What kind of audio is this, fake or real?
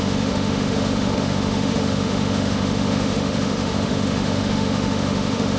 fake